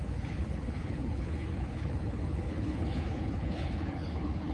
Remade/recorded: remade